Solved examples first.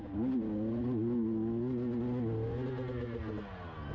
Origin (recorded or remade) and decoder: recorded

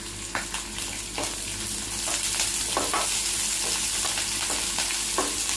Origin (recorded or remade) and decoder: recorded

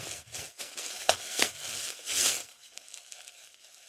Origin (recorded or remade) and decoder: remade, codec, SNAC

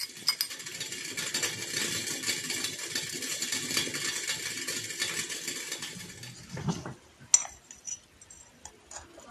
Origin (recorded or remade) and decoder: recorded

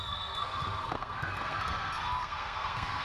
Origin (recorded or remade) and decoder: remade, codec, SNAC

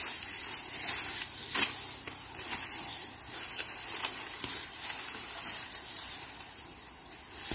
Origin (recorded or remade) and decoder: remade, vocoder, BigVGAN v2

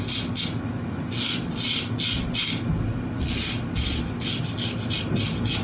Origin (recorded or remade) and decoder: recorded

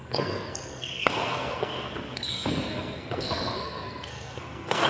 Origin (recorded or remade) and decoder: remade, codec, SNAC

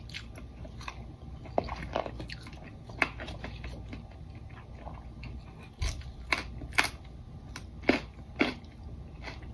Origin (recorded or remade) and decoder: recorded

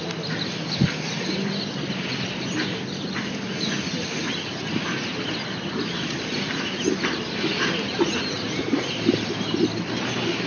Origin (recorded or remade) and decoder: recorded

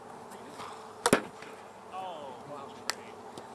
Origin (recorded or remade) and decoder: recorded